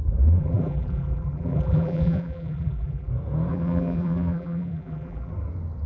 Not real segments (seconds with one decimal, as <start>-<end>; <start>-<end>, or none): 0.4-3.1; 3.5-5.3